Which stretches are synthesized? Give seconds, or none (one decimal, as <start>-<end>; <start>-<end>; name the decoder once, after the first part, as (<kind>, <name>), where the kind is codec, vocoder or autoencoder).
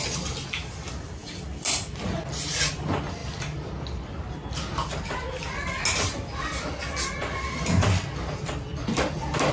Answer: none